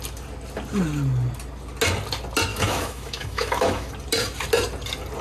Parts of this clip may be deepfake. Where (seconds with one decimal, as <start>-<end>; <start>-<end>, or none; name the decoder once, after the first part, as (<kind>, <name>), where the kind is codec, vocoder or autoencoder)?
2.5-3.9 (autoencoder, DAC-VAE)